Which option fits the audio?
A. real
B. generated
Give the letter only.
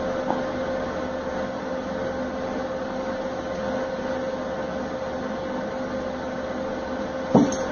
A